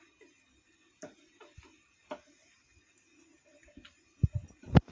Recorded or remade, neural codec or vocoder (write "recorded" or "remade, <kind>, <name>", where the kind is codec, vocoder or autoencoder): recorded